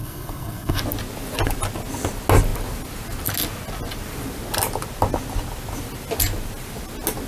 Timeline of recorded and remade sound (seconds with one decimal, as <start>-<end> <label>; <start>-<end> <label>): 0.0-0.8 remade; 0.8-7.3 recorded